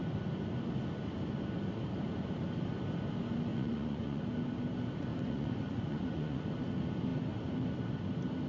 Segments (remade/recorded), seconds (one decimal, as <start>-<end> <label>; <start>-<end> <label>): 0.0-3.5 recorded; 3.5-4.2 remade; 4.2-5.1 recorded; 5.1-6.4 remade; 6.4-8.5 recorded